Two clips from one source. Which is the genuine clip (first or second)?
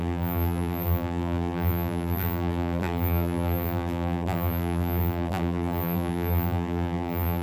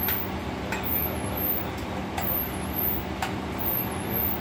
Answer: second